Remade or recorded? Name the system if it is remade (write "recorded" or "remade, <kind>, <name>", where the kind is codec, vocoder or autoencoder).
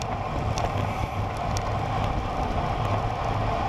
recorded